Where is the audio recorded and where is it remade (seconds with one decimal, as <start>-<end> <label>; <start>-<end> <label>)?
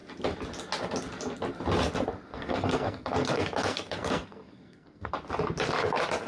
0.0-2.3 recorded; 2.3-5.1 remade; 5.1-6.3 recorded